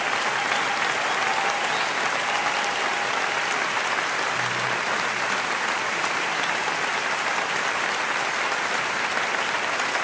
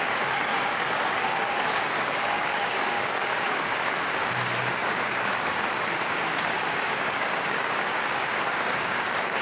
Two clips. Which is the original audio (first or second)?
first